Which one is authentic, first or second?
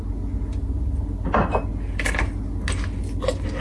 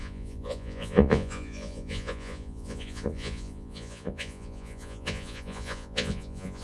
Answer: first